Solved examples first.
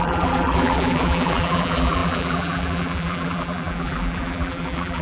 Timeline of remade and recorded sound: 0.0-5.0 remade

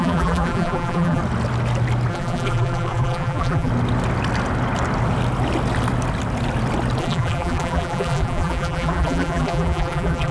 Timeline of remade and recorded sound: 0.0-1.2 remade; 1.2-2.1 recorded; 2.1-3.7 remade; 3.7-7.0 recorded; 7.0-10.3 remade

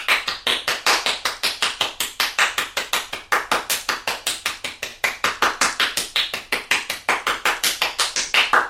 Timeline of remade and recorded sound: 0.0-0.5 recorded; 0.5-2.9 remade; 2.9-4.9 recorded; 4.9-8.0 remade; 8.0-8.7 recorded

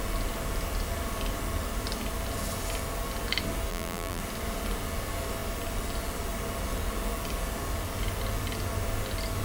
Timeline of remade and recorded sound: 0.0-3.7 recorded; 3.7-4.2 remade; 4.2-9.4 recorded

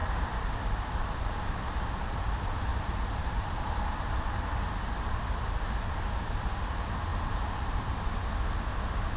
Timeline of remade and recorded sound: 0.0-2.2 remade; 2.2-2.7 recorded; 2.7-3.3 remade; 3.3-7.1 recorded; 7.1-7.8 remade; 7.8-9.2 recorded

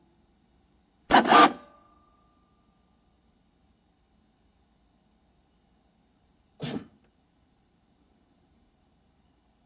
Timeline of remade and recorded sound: 0.0-1.3 remade; 1.3-6.0 recorded; 6.0-9.7 remade